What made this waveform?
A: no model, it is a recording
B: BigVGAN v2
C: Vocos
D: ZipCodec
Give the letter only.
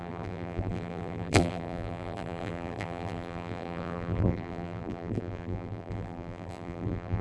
B